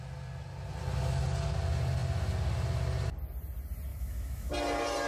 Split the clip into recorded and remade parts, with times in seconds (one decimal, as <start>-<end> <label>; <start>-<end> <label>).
0.0-3.9 recorded; 3.9-4.5 remade; 4.5-5.1 recorded